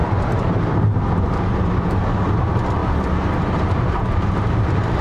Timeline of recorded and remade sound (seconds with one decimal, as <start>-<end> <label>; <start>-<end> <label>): 0.0-5.0 remade